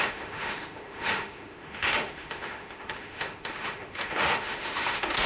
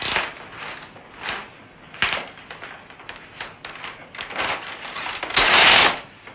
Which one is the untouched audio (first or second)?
second